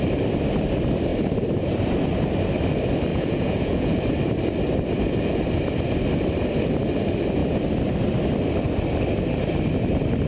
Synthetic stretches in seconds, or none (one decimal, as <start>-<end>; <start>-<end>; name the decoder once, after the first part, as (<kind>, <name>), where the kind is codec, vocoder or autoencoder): 3.1-4.0 (vocoder, Vocos)